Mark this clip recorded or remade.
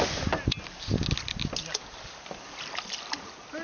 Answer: recorded